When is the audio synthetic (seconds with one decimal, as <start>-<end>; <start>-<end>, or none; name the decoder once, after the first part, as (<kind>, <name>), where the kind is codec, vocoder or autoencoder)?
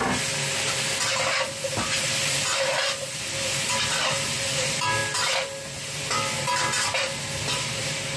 none